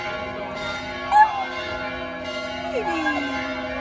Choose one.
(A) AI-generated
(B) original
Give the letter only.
B